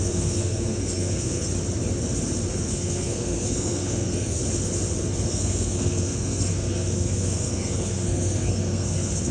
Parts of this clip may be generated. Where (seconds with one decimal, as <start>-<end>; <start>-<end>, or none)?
0.0-1.5; 2.5-4.4; 5.3-9.3